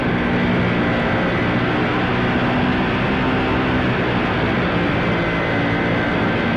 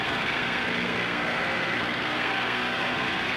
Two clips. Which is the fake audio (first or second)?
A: second